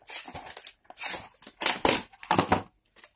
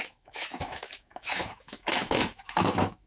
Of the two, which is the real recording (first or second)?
first